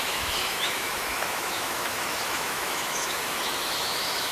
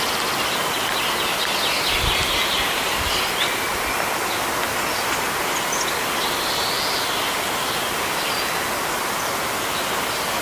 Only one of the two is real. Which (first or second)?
second